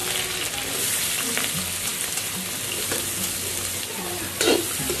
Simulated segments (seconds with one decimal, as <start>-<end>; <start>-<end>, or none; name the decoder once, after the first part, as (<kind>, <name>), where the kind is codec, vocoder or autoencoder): 1.9-5.0 (vocoder, BigVGAN v2)